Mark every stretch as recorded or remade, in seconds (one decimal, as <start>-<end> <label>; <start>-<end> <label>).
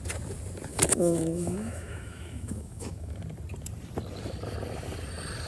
0.0-0.7 recorded; 0.7-3.2 remade; 3.2-5.5 recorded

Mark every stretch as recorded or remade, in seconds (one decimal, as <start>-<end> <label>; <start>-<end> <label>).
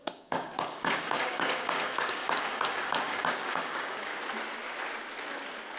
0.0-4.1 remade; 4.1-5.8 recorded